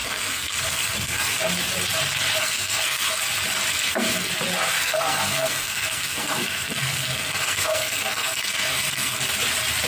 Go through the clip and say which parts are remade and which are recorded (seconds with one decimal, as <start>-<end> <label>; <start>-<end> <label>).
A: 0.0-1.4 remade; 1.4-2.4 recorded; 2.4-3.2 remade; 3.2-3.7 recorded; 3.7-4.3 remade; 4.3-4.8 recorded; 4.8-9.2 remade; 9.2-9.9 recorded